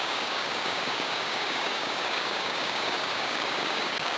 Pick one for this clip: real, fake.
fake